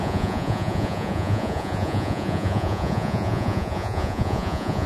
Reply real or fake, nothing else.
fake